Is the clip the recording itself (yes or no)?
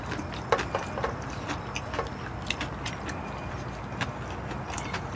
yes